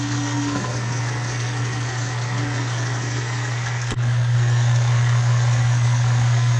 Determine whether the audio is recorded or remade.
remade